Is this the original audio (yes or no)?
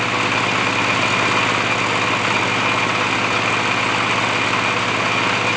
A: yes